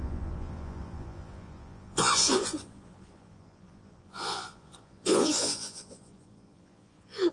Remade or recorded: remade